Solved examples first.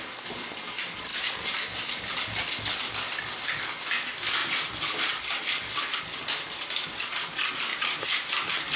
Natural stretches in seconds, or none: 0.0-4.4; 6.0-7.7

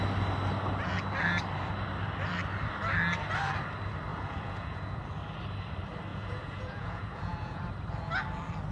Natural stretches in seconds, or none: 0.0-4.1; 5.0-6.1; 7.7-8.7

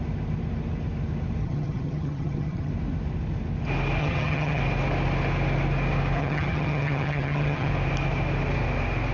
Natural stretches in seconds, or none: 0.0-1.4; 2.7-4.0; 4.6-6.2; 7.7-9.1

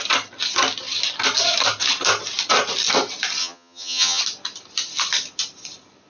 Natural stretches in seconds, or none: 0.0-3.4; 4.2-6.1

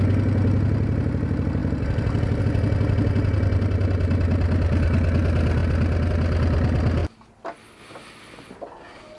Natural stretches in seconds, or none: 0.0-9.2

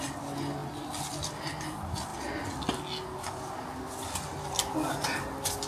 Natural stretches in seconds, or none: 0.0-5.7

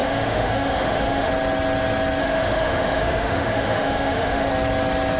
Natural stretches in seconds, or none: 1.3-2.2; 4.5-5.2

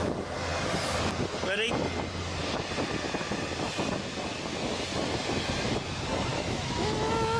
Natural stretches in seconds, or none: 0.0-6.3